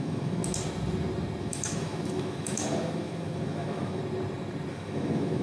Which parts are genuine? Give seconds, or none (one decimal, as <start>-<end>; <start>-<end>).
0.4-1.4; 4.0-4.7